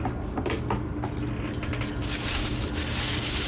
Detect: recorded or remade recorded